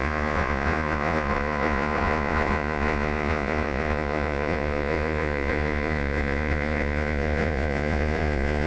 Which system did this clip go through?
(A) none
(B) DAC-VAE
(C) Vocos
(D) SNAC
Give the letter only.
C